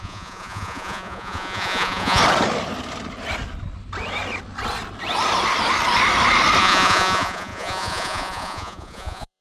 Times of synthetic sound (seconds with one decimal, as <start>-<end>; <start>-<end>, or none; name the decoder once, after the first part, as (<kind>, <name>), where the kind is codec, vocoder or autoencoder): 0.0-2.2 (vocoder, Vocos); 6.6-9.4